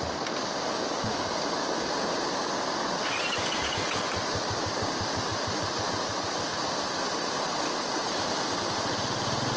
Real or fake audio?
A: real